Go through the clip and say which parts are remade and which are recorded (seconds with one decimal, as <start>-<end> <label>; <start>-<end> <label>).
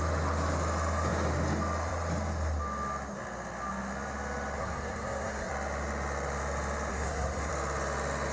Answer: 0.0-4.6 recorded; 4.6-5.5 remade; 5.5-6.9 recorded; 6.9-7.5 remade; 7.5-8.3 recorded